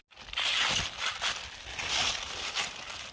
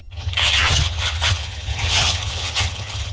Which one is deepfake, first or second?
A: second